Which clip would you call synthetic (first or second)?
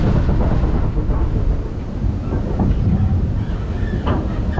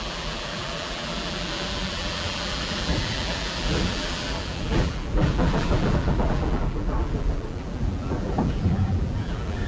second